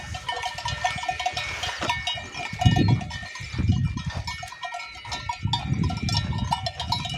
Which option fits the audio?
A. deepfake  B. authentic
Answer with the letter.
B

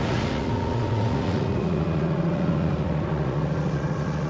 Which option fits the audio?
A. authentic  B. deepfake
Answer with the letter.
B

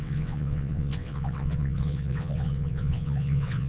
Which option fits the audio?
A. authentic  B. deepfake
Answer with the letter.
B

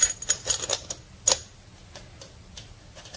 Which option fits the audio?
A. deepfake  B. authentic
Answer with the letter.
B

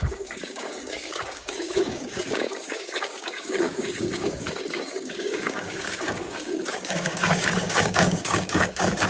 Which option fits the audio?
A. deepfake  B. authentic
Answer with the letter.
A